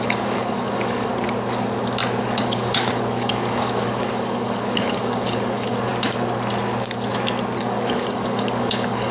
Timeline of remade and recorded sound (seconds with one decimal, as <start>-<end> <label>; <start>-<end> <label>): 0.0-1.1 remade; 1.1-2.2 recorded; 2.2-5.9 remade; 5.9-7.6 recorded; 7.6-9.1 remade